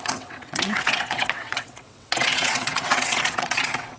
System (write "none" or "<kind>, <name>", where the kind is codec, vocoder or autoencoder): vocoder, WaveNeXt